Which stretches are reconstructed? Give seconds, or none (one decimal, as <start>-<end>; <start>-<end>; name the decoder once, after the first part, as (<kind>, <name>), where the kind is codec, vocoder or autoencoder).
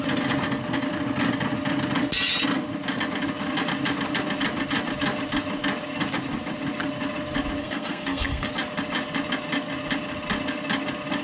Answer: 7.6-8.5 (codec, SNAC)